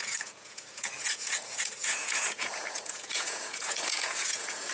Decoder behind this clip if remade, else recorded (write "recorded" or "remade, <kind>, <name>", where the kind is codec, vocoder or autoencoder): remade, vocoder, Vocos